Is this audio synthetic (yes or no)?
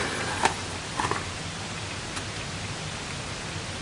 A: no